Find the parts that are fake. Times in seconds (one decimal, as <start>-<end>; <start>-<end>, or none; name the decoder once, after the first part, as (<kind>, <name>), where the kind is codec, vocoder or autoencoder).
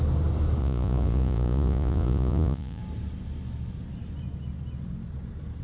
0.6-2.8 (vocoder, Vocos)